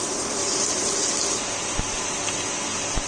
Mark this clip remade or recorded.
recorded